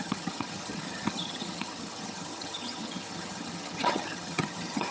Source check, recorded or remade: remade